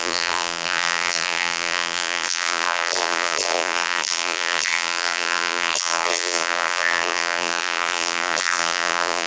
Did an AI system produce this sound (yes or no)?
yes